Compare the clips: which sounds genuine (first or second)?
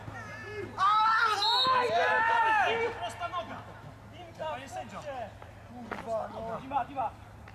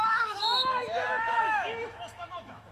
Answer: first